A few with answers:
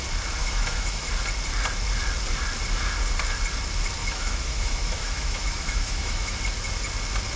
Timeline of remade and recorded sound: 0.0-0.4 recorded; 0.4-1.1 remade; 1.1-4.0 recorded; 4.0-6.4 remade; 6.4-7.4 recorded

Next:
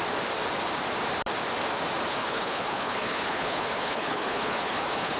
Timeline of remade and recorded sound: 0.0-2.1 recorded; 2.1-5.2 remade

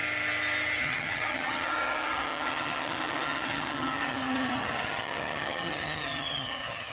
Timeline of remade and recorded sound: 0.0-0.8 recorded; 0.8-6.9 remade

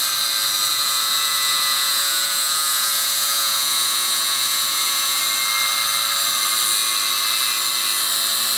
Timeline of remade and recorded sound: 0.0-0.7 recorded; 0.7-5.2 remade; 5.2-8.6 recorded